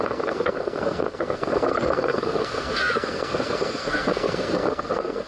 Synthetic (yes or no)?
yes